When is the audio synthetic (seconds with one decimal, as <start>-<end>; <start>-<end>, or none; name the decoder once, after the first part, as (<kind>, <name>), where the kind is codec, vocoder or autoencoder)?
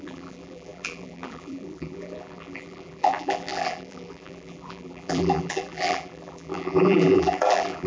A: 0.0-7.9 (vocoder, BigVGAN v2)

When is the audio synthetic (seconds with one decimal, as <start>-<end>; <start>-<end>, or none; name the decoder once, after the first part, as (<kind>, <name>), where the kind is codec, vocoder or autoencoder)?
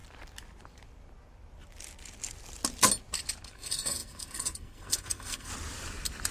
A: 3.5-5.5 (codec, SNAC)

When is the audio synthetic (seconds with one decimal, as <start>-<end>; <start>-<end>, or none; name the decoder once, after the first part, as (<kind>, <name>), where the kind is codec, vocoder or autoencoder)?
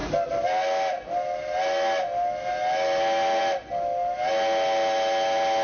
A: none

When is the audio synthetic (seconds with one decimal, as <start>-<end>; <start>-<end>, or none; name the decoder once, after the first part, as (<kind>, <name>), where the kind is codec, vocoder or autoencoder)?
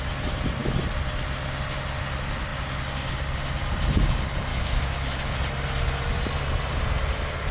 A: 4.5-5.3 (autoencoder, DAC-VAE)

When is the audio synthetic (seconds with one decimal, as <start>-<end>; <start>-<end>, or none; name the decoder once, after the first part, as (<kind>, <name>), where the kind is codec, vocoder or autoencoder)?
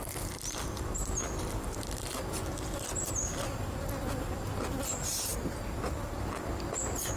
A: none